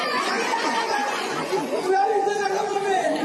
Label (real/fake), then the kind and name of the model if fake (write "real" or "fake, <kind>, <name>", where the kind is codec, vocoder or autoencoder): fake, vocoder, Vocos